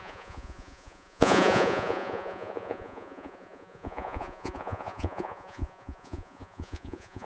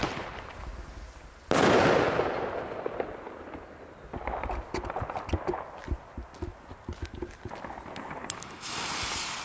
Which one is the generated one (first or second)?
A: first